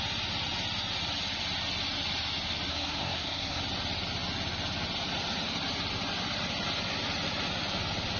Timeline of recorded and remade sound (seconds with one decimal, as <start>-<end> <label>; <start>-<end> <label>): 0.0-2.7 recorded; 2.7-3.6 remade; 3.6-8.2 recorded